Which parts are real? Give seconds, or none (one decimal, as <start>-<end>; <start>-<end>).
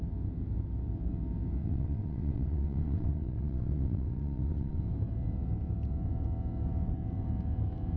0.0-1.6; 4.8-8.0